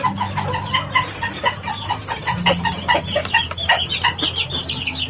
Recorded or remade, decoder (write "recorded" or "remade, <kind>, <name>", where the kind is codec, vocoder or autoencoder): remade, vocoder, BigVGAN v2